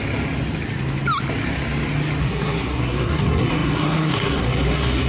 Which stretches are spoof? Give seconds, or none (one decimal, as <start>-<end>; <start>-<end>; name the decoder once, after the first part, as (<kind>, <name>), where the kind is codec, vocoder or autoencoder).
2.2-5.1 (codec, SNAC)